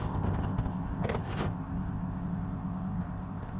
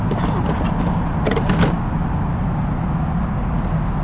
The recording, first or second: second